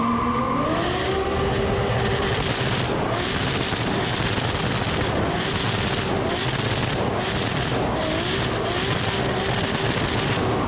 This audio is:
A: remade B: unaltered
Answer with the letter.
B